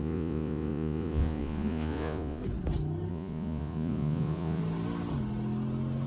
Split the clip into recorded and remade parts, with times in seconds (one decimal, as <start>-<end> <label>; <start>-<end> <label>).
0.0-2.4 remade; 2.4-3.1 recorded; 3.1-4.6 remade; 4.6-6.1 recorded